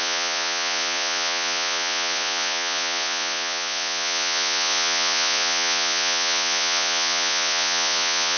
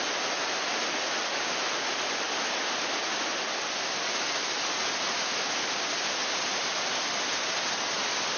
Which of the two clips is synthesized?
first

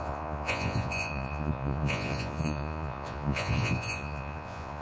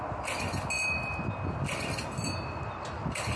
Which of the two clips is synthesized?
first